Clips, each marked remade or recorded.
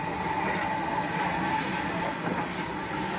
recorded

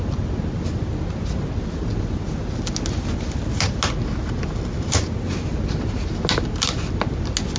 recorded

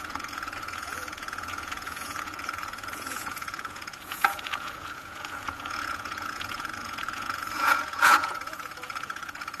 remade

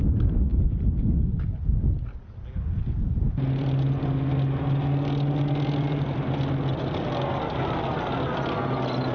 recorded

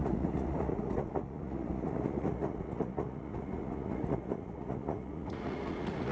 remade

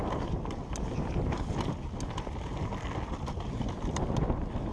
recorded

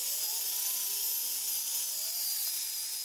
recorded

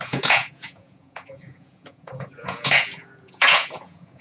remade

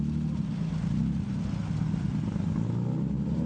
recorded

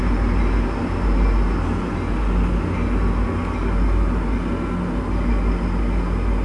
recorded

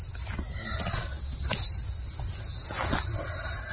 recorded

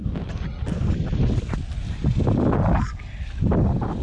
recorded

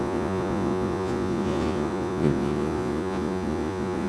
remade